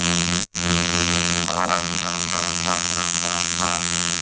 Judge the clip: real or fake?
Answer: fake